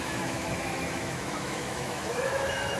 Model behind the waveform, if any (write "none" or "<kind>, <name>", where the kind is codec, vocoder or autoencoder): autoencoder, DAC-VAE